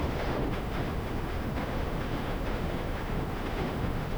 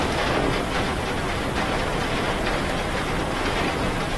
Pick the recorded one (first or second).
second